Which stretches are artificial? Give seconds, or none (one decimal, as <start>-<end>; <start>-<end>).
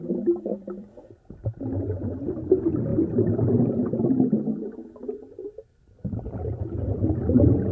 0.5-1.3; 2.9-4.1; 5.0-7.2